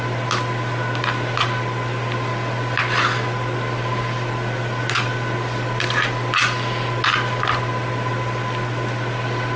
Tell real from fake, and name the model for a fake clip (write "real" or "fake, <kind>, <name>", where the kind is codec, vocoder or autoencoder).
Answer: real